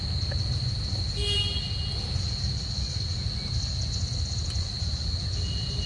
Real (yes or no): yes